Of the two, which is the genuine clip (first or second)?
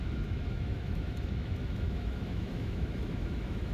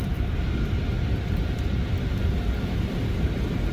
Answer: second